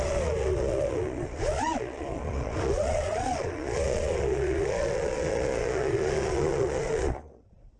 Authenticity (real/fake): fake